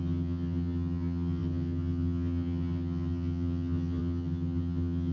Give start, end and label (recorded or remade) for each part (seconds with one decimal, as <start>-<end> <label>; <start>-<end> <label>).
0.0-5.1 remade